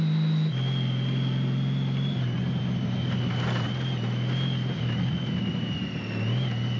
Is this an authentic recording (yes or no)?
yes